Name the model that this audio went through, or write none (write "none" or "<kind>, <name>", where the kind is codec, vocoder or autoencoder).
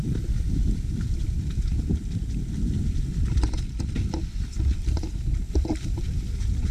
vocoder, BigVGAN v2